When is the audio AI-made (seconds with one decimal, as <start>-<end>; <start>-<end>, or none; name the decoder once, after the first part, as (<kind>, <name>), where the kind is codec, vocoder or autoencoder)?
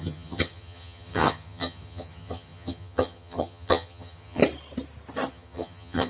0.0-4.4 (vocoder, HiFi-GAN); 5.3-6.1